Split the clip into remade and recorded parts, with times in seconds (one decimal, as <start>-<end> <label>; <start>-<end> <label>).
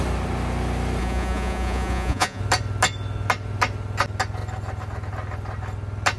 0.0-1.0 recorded; 1.0-2.4 remade; 2.4-6.2 recorded